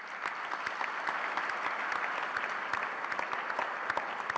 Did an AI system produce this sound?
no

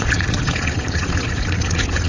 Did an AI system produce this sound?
yes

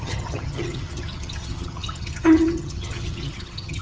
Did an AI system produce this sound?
yes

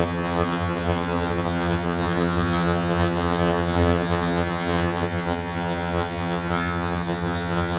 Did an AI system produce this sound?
yes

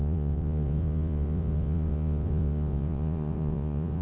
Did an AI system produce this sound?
yes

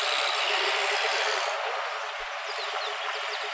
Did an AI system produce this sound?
no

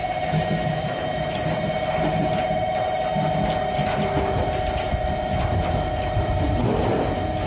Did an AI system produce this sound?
no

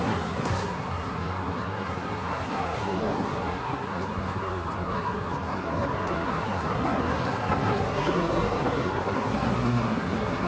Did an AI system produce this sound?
yes